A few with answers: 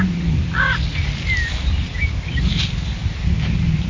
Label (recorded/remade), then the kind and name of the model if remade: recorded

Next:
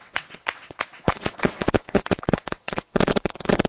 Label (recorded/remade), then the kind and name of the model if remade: remade, vocoder, WaveNeXt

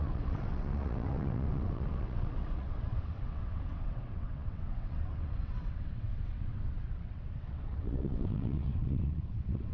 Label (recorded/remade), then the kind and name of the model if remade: remade, vocoder, WaveNeXt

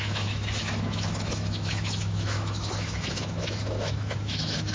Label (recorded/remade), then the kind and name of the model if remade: remade, autoencoder, DAC-VAE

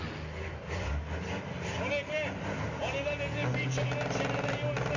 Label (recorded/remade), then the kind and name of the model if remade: recorded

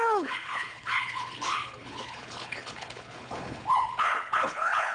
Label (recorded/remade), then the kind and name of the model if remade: remade, codec, HILCodec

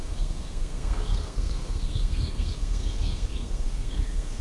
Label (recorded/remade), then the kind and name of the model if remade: remade, codec, SNAC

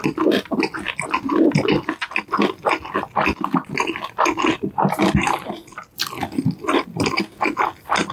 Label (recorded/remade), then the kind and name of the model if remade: recorded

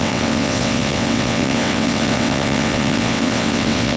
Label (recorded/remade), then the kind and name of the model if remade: remade, vocoder, WaveNeXt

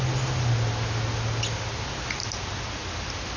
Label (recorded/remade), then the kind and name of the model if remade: recorded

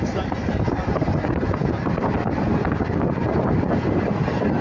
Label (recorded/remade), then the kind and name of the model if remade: recorded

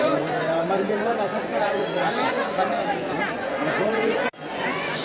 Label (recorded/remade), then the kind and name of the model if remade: remade, vocoder, Vocos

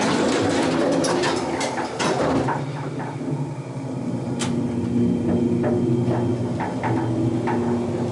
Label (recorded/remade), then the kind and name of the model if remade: recorded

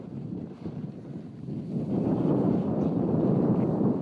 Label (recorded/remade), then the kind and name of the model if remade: recorded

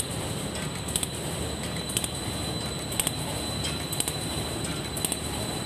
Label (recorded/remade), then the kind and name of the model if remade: recorded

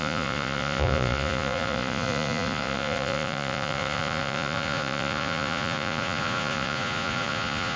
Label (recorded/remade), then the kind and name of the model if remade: remade, vocoder, Vocos